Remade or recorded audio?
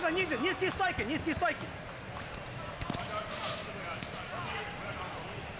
recorded